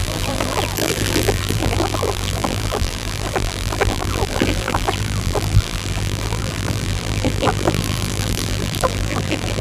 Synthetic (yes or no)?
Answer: yes